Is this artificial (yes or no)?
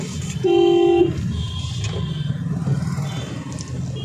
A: no